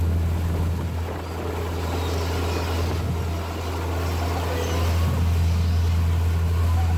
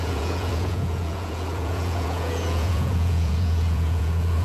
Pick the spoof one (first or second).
second